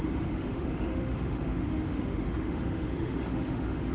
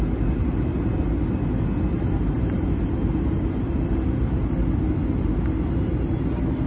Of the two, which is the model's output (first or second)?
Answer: first